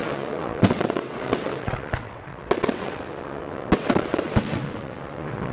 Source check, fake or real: fake